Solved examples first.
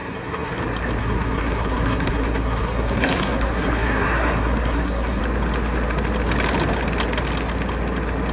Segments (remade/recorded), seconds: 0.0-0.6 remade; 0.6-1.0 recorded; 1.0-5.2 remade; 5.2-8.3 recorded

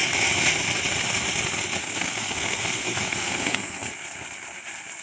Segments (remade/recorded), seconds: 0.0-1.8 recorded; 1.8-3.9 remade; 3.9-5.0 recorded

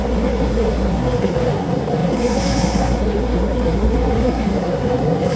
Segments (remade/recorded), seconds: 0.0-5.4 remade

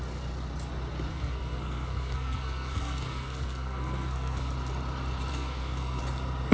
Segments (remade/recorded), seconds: 0.0-1.1 recorded; 1.1-4.5 remade; 4.5-5.3 recorded; 5.3-6.0 remade; 6.0-6.5 recorded

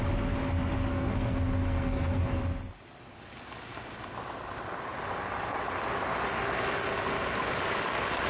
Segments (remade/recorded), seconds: 0.0-0.9 recorded; 0.9-2.2 remade; 2.2-8.3 recorded

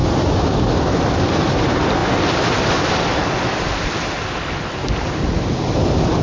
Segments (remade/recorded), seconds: 0.0-6.2 recorded

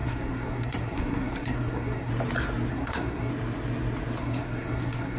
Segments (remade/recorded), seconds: 0.0-2.1 remade; 2.1-2.7 recorded; 2.7-3.3 remade; 3.3-4.2 recorded; 4.2-5.2 remade

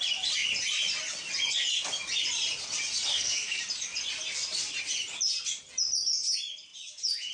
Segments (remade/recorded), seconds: 0.0-3.1 recorded; 3.1-3.6 remade; 3.6-7.3 recorded